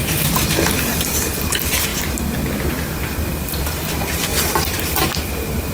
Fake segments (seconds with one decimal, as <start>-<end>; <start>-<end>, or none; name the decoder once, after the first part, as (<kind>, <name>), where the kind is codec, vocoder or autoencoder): 0.8-1.9 (vocoder, BigVGAN v2); 2.7-5.7